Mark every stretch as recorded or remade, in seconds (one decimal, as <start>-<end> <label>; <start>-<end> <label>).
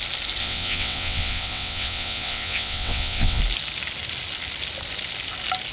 0.0-0.4 recorded; 0.4-3.4 remade; 3.4-5.7 recorded